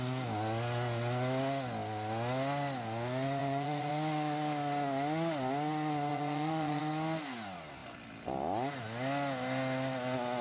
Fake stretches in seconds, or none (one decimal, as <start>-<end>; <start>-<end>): 3.4-3.9; 6.1-6.8